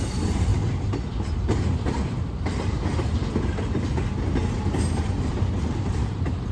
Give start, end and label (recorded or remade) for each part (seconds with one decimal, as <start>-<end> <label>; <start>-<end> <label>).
0.0-0.5 remade; 0.5-1.6 recorded; 1.6-3.2 remade; 3.2-4.6 recorded; 4.6-6.5 remade